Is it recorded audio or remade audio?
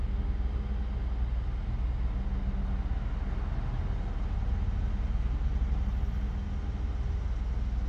recorded